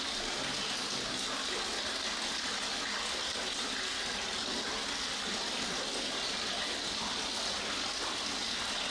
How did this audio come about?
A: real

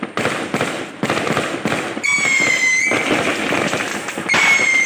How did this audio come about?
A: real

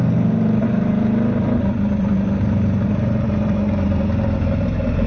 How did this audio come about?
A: fake